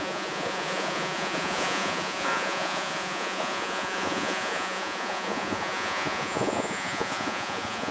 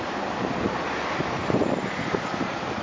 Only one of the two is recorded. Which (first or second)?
second